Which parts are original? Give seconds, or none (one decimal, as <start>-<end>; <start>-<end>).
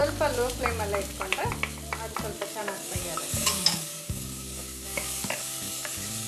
0.0-2.6